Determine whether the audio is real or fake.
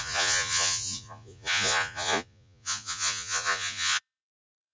fake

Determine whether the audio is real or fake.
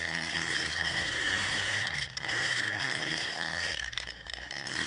fake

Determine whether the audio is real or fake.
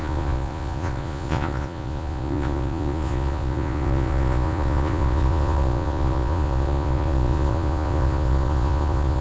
fake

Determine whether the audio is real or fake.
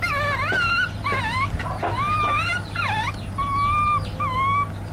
real